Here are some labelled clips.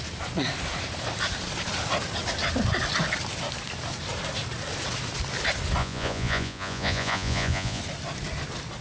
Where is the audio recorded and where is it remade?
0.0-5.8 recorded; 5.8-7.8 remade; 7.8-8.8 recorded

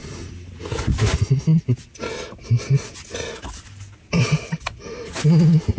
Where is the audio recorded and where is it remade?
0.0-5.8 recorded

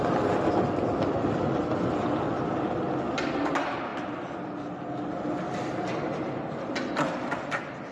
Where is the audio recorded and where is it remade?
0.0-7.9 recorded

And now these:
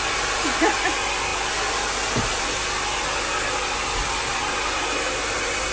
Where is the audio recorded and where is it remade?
0.0-5.7 recorded

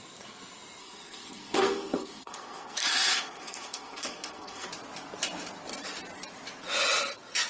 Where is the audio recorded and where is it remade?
0.0-0.8 recorded; 0.8-4.7 remade; 4.7-7.5 recorded

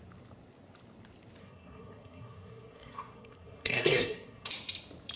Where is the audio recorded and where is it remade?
0.0-1.4 recorded; 1.4-4.5 remade; 4.5-5.2 recorded

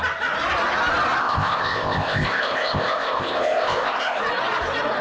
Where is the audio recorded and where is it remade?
0.0-1.2 recorded; 1.2-4.2 remade; 4.2-5.0 recorded